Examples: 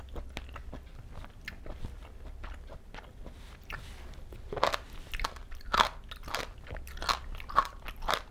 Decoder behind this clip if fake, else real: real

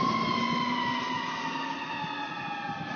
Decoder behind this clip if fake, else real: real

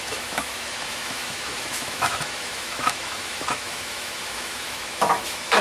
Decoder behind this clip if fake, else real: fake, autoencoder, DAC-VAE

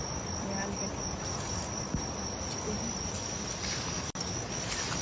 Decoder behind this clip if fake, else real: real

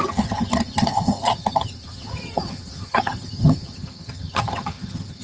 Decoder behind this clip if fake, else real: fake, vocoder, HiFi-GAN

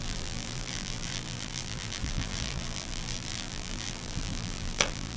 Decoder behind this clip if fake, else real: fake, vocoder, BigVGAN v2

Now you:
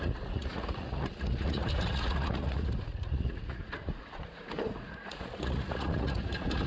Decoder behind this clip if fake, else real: fake, vocoder, Vocos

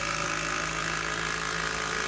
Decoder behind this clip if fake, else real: real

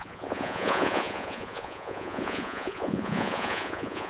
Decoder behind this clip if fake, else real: fake, vocoder, Vocos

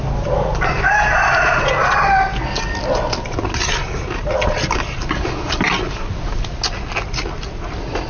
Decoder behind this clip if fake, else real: real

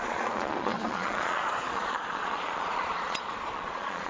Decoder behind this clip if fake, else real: fake, vocoder, Vocos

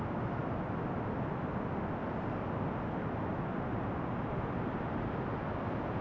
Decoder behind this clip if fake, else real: real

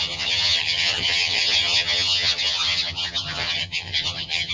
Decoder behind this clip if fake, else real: fake, vocoder, HiFi-GAN